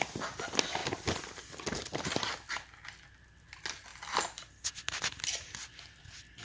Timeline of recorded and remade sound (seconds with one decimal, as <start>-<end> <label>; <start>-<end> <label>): 0.0-6.4 recorded